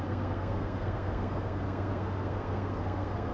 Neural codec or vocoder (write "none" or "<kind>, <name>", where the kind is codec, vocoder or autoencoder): codec, SNAC